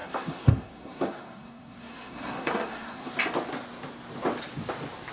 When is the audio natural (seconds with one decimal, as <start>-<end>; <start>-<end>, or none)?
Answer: 3.1-5.1